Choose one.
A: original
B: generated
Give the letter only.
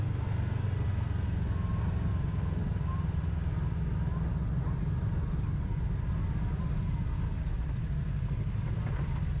A